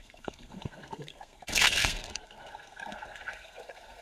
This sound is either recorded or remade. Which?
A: remade